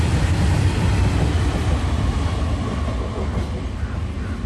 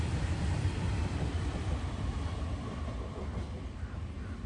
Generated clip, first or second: second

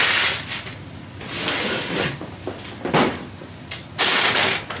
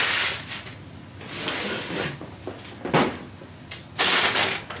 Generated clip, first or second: first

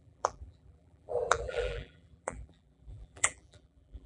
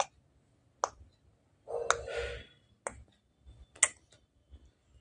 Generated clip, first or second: first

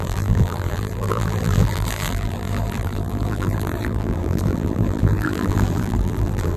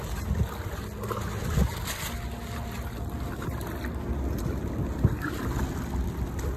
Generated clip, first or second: first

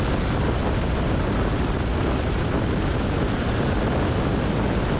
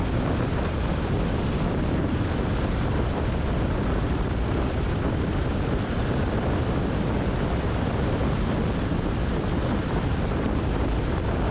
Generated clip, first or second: second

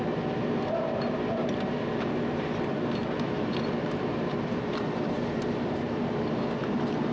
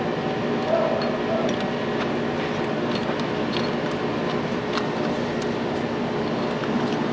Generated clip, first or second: first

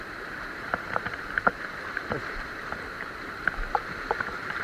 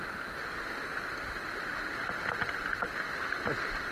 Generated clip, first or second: first